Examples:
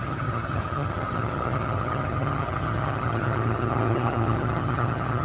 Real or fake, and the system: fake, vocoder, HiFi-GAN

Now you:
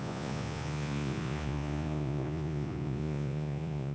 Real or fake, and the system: fake, vocoder, Vocos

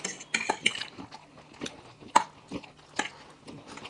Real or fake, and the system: real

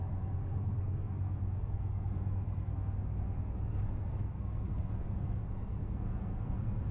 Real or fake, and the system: fake, codec, SNAC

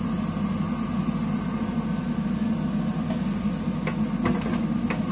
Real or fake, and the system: real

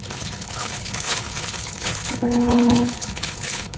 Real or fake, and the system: fake, codec, HILCodec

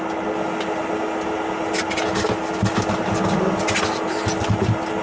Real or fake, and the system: real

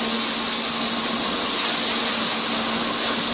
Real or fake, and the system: real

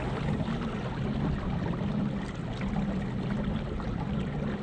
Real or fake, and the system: real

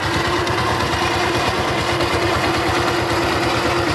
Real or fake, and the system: real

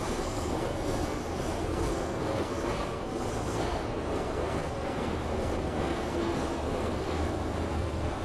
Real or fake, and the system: fake, codec, SNAC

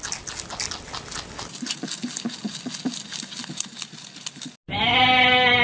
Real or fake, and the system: real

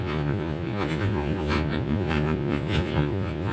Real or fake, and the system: fake, vocoder, Vocos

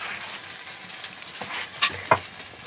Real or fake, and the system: real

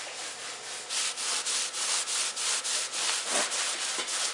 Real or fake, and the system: real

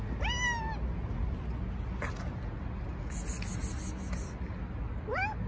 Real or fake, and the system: real